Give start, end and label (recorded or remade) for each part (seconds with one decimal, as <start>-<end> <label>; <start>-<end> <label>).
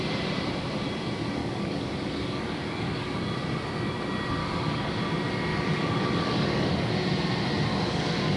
0.0-1.4 recorded; 1.4-3.2 remade; 3.2-4.4 recorded; 4.4-5.0 remade; 5.0-5.5 recorded; 5.5-6.9 remade; 6.9-7.7 recorded; 7.7-8.4 remade